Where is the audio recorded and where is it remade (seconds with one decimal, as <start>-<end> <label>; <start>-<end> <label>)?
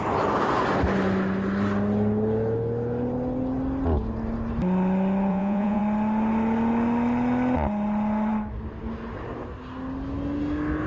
0.0-5.3 recorded; 5.3-5.8 remade; 5.8-10.9 recorded